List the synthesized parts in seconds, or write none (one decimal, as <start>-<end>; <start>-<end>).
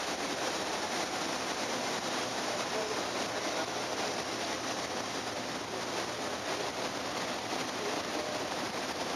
0.0-2.7; 7.6-9.2